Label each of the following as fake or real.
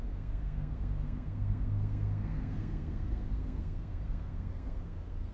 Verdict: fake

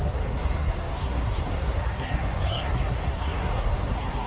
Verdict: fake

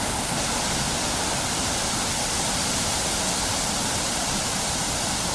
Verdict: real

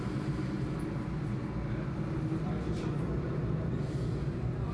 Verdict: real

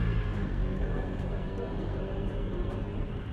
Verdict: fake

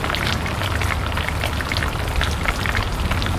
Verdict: real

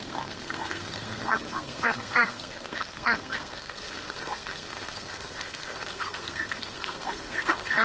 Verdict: fake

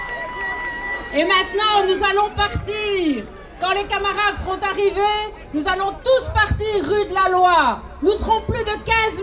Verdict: real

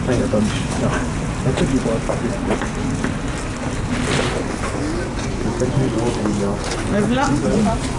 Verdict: real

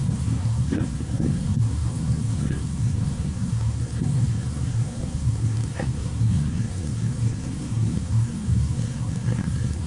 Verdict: fake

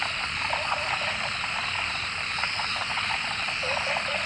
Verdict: real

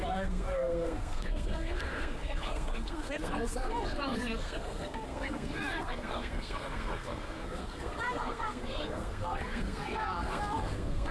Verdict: fake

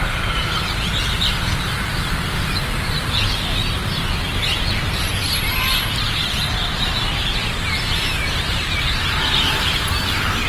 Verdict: real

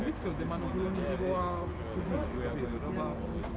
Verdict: real